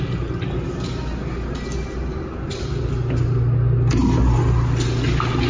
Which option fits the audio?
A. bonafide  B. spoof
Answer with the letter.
A